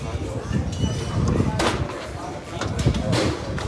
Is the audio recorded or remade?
recorded